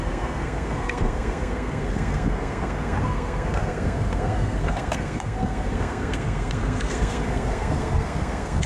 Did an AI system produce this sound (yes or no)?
yes